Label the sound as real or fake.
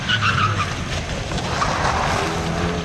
real